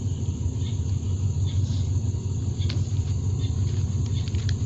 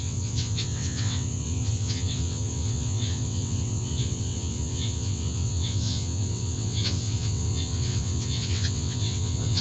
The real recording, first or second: first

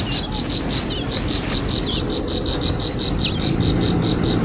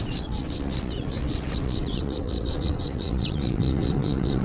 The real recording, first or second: first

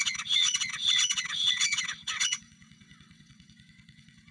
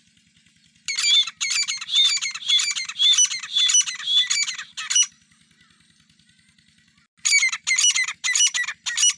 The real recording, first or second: second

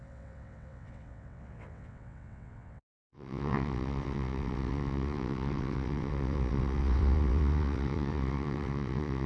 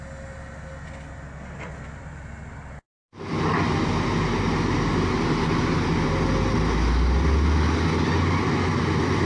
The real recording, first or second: second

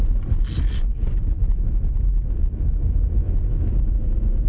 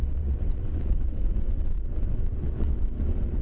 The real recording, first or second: first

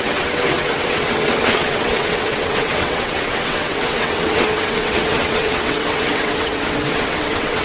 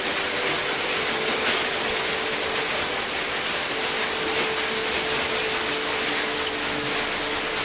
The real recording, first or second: second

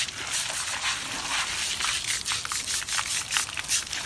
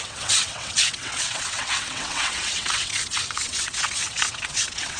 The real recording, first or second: first